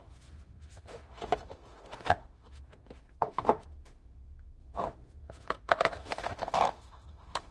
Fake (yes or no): yes